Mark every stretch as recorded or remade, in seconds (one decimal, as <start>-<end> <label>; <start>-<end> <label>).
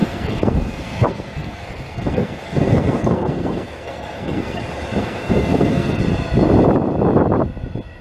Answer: 0.0-4.6 remade; 4.6-5.0 recorded; 5.0-6.0 remade; 6.0-8.0 recorded